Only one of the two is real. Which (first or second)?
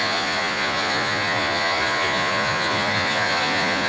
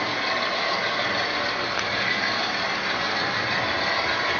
second